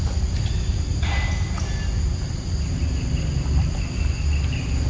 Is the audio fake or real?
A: real